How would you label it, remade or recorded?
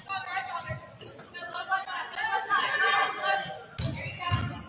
recorded